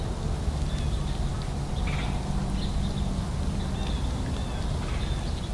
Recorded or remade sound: recorded